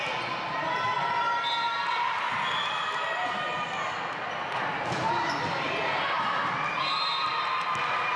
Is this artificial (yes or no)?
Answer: no